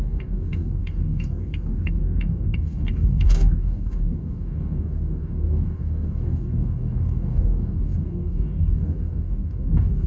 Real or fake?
fake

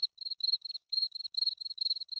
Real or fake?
fake